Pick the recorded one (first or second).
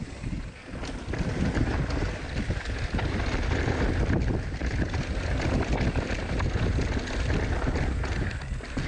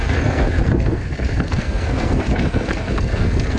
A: first